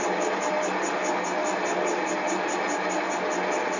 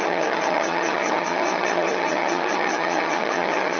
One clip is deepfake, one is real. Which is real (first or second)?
first